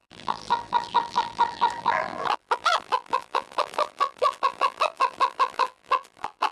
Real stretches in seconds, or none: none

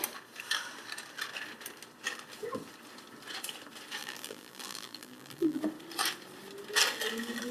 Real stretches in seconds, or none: 0.0-4.0; 5.6-7.5

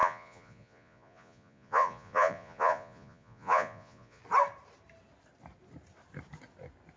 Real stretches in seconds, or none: 4.2-7.0